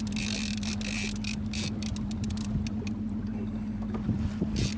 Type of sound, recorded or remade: recorded